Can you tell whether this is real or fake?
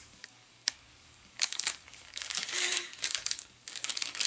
fake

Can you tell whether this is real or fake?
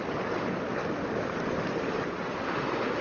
real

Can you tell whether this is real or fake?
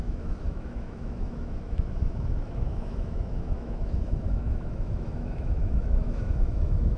fake